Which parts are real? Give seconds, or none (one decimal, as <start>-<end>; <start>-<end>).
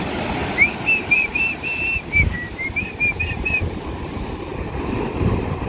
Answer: 0.0-0.4; 3.8-5.7